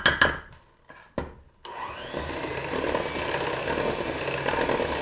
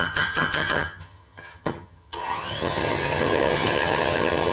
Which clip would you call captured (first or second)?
first